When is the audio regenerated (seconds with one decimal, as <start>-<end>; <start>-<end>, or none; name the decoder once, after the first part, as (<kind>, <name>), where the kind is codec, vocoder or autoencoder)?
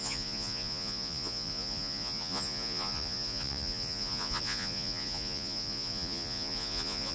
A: 0.0-7.1 (vocoder, Vocos)